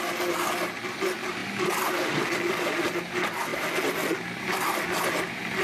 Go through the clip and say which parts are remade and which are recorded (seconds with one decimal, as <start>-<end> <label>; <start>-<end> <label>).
0.0-5.6 recorded